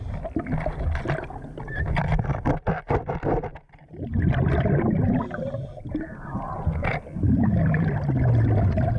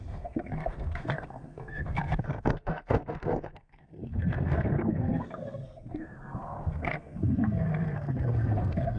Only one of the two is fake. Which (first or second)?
second